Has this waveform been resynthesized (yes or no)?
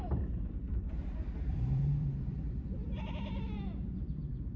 yes